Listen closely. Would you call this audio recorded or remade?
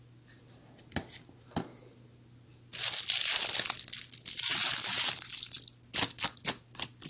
recorded